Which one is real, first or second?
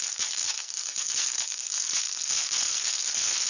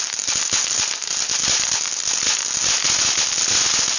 second